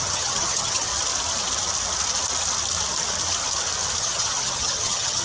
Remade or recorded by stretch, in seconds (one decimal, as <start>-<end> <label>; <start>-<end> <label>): 0.0-0.9 remade; 0.9-4.0 recorded; 4.0-5.2 remade

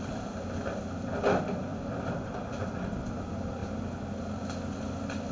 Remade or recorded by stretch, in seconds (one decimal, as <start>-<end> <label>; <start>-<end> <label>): 0.0-5.3 recorded